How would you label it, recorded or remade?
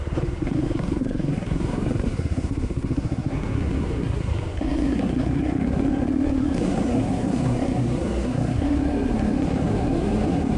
remade